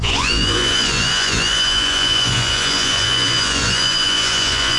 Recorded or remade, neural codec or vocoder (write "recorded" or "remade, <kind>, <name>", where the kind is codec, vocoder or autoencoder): remade, vocoder, Vocos